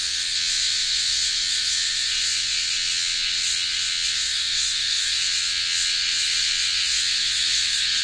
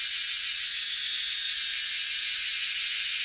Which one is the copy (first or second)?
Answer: first